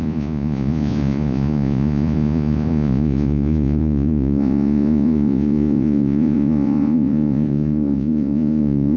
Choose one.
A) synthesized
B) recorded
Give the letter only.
A